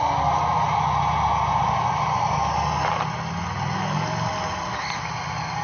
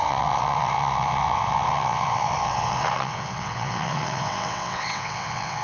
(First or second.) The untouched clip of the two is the first